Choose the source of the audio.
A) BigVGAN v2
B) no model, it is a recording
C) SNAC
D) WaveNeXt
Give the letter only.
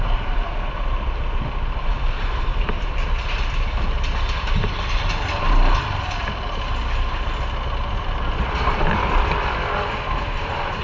B